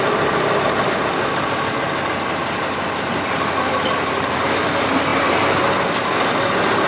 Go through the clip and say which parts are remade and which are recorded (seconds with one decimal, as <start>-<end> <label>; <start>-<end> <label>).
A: 0.0-6.9 recorded